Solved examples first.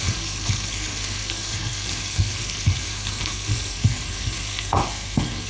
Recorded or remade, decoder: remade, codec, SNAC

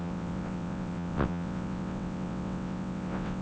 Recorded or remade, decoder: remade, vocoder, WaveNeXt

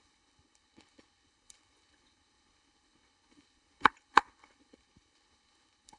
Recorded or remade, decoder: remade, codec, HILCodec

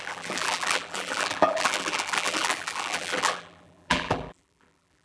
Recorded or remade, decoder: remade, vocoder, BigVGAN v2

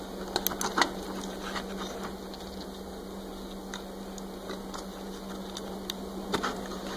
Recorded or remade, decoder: recorded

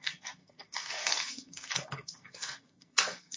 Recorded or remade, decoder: remade, codec, SNAC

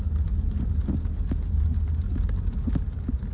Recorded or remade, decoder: recorded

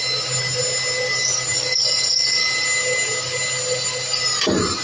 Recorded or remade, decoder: recorded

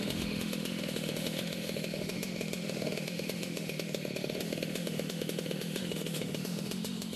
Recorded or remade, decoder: remade, autoencoder, DAC-VAE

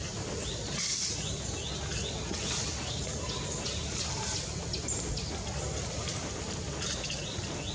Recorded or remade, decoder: recorded